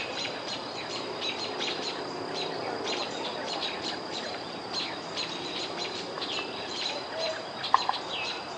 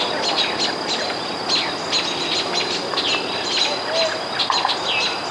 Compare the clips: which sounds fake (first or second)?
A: first